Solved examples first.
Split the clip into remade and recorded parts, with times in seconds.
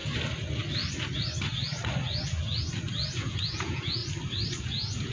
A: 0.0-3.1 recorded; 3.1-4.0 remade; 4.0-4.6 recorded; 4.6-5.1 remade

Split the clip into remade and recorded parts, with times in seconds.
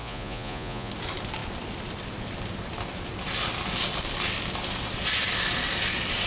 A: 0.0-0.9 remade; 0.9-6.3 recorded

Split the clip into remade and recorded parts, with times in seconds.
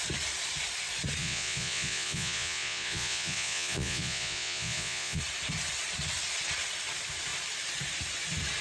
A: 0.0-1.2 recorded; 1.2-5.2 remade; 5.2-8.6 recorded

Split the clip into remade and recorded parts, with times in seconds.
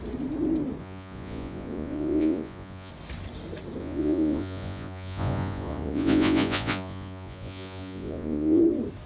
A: 0.0-0.8 recorded; 0.8-2.9 remade; 2.9-3.8 recorded; 3.8-8.6 remade; 8.6-9.1 recorded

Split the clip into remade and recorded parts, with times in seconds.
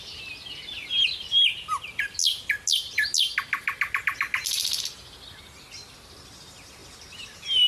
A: 0.0-7.7 recorded